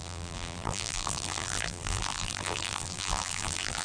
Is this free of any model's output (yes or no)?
no